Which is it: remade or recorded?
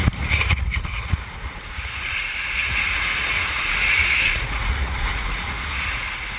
remade